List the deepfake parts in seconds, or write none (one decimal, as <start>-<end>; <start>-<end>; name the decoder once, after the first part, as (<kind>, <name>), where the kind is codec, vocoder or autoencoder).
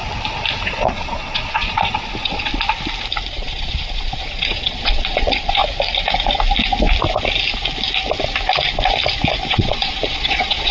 0.7-2.5 (vocoder, Vocos); 3.3-5.6; 9.5-10.7